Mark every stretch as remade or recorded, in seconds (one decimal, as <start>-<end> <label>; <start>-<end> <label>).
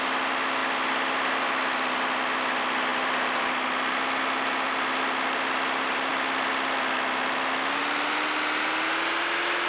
0.0-9.7 recorded